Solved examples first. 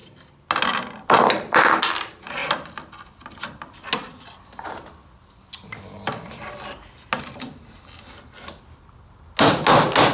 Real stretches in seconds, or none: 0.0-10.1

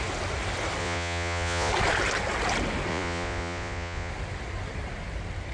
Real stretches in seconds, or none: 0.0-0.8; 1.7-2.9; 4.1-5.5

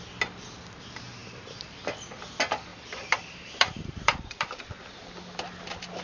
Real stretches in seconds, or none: 0.0-2.7; 4.5-6.0

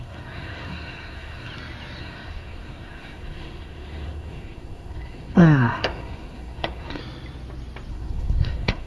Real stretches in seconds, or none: 1.5-2.0; 7.0-7.9

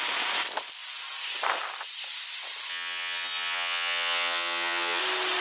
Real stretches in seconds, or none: 0.0-2.7; 5.0-5.4